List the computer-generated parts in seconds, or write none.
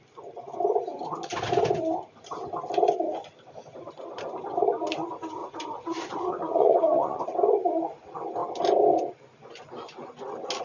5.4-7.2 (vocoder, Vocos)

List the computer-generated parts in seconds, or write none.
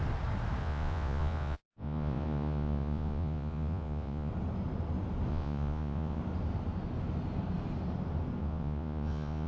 0.6-4.3 (vocoder, Vocos); 5.3-6.2; 8.4-9.5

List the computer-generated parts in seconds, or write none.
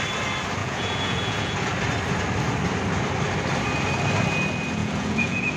0.6-1.7 (vocoder, Vocos); 4.8-5.6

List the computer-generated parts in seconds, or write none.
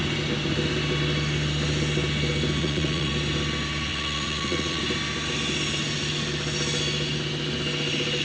2.6-3.1 (vocoder, Vocos); 3.9-4.8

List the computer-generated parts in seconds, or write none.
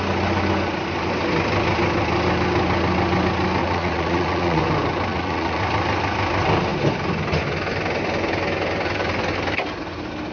3.6-4.6 (vocoder, Vocos); 5.1-5.6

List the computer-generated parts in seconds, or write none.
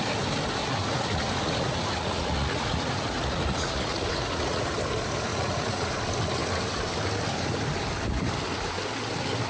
0.6-4.6 (vocoder, Vocos); 5.3-5.9